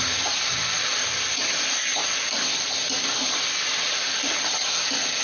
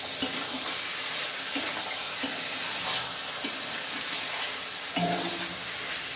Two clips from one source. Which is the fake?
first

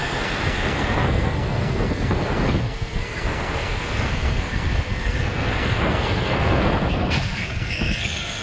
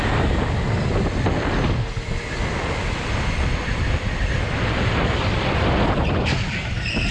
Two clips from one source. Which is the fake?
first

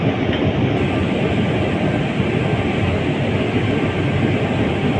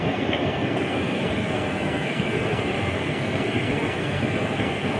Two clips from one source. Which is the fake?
second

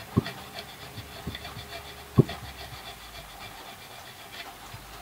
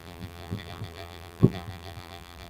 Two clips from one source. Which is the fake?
second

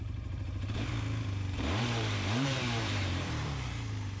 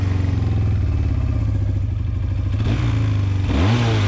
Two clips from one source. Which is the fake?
first